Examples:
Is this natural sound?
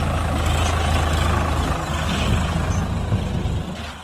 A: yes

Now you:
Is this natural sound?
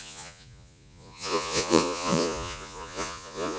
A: no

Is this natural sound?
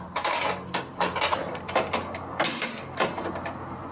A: yes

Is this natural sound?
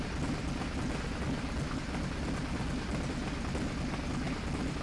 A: yes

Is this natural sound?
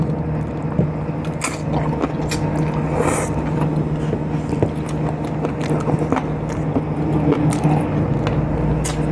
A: yes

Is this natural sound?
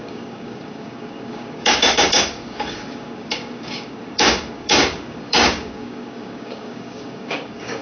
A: no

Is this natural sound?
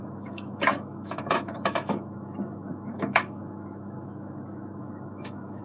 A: no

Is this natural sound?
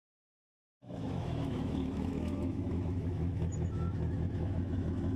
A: no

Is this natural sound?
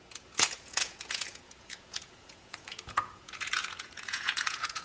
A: no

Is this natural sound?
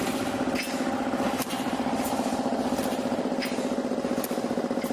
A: yes